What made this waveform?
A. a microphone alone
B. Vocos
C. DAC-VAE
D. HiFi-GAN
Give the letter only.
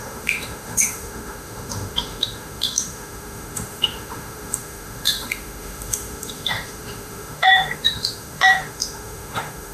C